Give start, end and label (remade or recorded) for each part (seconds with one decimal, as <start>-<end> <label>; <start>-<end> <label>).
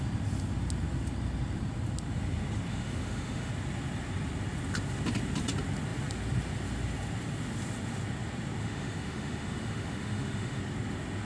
0.0-2.7 recorded; 2.7-3.5 remade; 3.5-8.6 recorded; 8.6-10.6 remade; 10.6-11.3 recorded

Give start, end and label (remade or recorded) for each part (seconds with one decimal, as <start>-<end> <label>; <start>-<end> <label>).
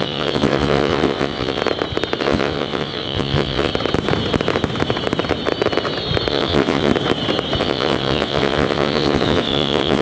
0.0-1.6 remade; 1.6-2.2 recorded; 2.2-3.7 remade; 3.7-6.3 recorded; 6.3-6.9 remade; 6.9-7.6 recorded; 7.6-10.0 remade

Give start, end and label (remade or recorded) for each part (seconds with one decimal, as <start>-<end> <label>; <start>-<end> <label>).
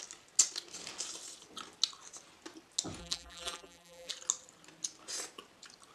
0.0-3.0 recorded; 3.0-4.1 remade; 4.1-5.9 recorded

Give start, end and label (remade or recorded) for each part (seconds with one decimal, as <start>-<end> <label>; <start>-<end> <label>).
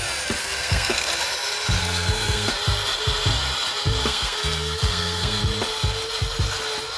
0.0-0.4 recorded; 0.4-1.1 remade; 1.1-1.8 recorded; 1.8-2.5 remade; 2.5-4.0 recorded; 4.0-5.4 remade; 5.4-7.0 recorded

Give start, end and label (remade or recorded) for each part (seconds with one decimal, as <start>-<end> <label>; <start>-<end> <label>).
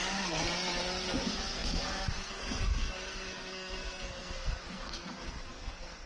0.0-1.2 recorded; 1.2-6.1 remade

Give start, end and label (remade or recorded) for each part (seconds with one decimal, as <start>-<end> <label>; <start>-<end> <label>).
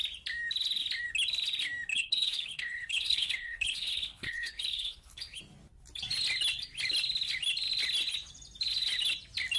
0.0-1.9 recorded; 1.9-5.4 remade; 5.4-9.6 recorded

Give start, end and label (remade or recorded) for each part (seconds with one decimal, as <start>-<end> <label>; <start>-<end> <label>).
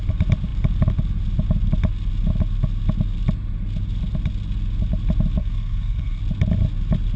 0.0-5.4 recorded; 5.4-6.2 remade; 6.2-7.2 recorded